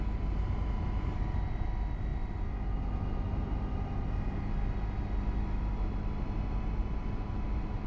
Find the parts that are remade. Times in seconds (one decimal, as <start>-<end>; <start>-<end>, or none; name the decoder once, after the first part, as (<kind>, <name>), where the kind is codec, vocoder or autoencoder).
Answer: none